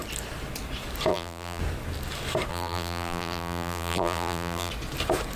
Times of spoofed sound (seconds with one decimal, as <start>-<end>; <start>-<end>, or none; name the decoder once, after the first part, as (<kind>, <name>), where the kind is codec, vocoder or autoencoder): 1.1-1.6 (vocoder, BigVGAN v2); 2.5-4.7